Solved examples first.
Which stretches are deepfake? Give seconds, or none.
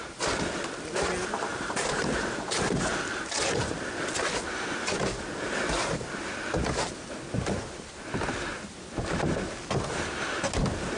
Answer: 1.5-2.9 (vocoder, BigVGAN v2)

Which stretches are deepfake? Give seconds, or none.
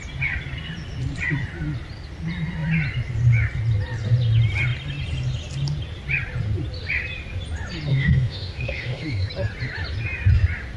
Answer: 7.9-9.3 (autoencoder, DAC-VAE)